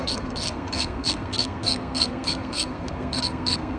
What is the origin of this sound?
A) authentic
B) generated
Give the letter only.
B